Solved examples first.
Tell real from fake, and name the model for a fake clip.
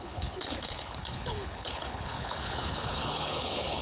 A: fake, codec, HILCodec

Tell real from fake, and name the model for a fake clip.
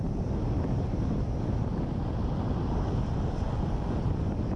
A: real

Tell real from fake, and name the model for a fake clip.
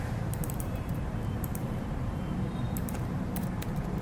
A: fake, vocoder, BigVGAN v2